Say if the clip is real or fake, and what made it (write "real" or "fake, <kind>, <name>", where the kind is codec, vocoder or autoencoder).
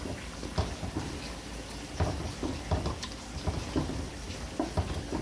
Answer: real